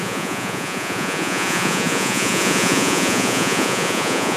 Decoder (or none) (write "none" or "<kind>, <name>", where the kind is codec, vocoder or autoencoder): vocoder, Vocos